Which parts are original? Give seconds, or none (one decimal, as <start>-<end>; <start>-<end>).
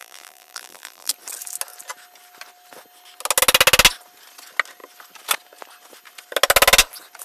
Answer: 1.1-7.2